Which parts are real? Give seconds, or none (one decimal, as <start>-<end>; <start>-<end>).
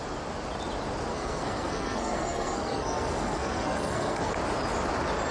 0.0-1.1; 4.3-5.3